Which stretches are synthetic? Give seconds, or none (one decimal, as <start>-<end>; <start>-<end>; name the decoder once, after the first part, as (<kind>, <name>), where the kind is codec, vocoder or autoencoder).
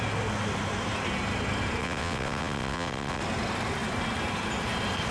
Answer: 1.8-3.2 (vocoder, WaveNeXt)